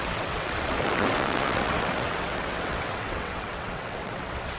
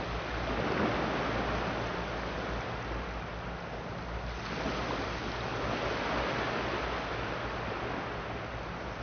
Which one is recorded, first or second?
second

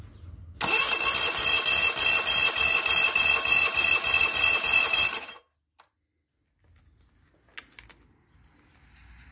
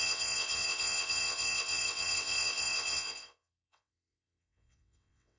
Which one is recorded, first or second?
first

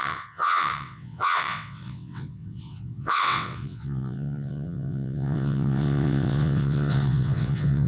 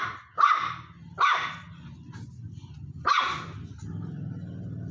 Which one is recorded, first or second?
second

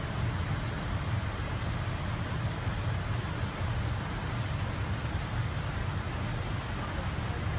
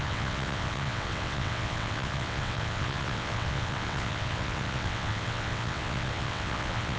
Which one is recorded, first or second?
first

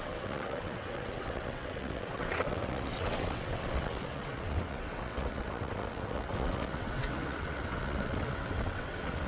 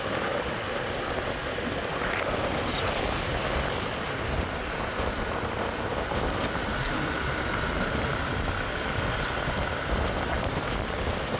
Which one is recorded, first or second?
second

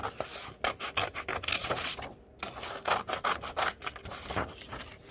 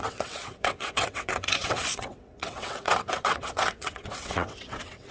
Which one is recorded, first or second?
first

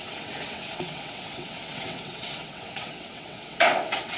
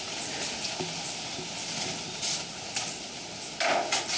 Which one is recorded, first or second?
second